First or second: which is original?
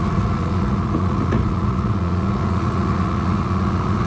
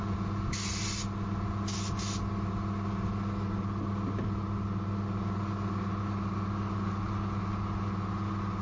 second